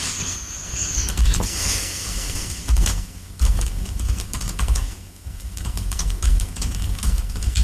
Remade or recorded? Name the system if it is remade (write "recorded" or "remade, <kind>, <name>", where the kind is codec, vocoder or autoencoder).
remade, codec, SNAC